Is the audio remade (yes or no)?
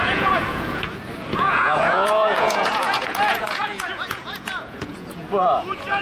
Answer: yes